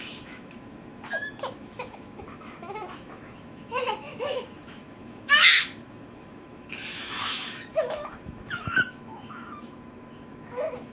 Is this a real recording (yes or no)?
no